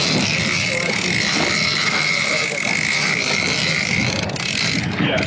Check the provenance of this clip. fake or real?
real